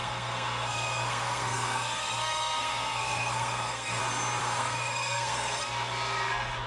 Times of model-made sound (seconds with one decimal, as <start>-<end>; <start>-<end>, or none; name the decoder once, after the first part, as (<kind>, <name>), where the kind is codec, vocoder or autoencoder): 0.0-4.0 (codec, SNAC); 4.4-5.6